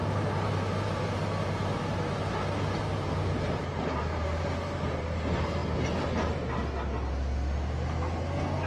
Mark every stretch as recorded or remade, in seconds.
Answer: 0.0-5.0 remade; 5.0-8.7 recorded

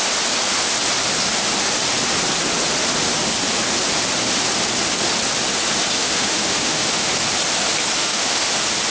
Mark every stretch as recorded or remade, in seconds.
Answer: 0.0-6.0 recorded; 6.0-7.1 remade; 7.1-8.0 recorded; 8.0-8.5 remade; 8.5-8.9 recorded

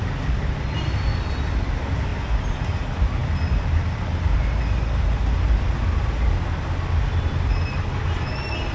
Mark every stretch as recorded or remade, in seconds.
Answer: 0.0-8.7 recorded

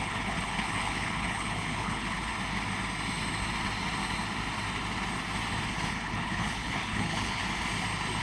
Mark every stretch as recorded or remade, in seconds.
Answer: 0.0-2.3 remade; 2.3-5.9 recorded; 5.9-7.4 remade; 7.4-8.2 recorded

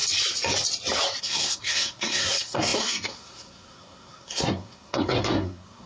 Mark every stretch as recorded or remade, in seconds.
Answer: 0.0-1.2 recorded; 1.2-5.9 remade

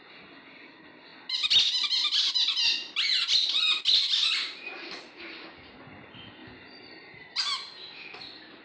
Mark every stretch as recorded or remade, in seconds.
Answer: 0.0-8.6 recorded

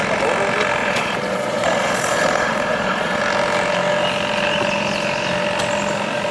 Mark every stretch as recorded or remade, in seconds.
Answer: 0.0-0.8 recorded; 0.8-3.2 remade; 3.2-6.3 recorded